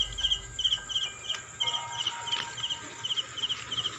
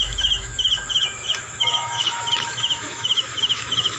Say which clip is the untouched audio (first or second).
first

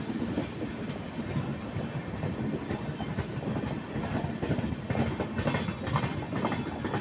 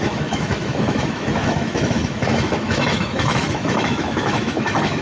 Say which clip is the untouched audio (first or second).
first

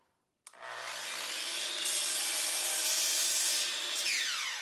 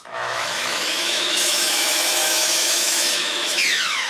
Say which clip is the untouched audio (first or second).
first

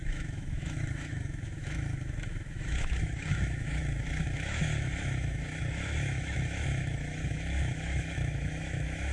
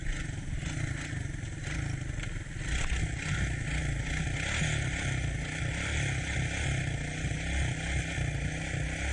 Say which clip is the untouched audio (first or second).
second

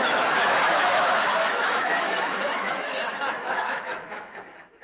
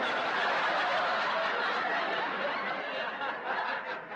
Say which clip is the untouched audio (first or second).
second